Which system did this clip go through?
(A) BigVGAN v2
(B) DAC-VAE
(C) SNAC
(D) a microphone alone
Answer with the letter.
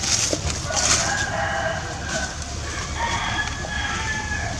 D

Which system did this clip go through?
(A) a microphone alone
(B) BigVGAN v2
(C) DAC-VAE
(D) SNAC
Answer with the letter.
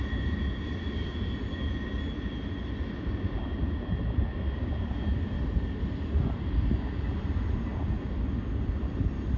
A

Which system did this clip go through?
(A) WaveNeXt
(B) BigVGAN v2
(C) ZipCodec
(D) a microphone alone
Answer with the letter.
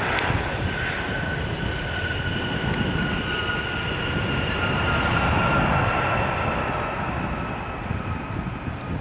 D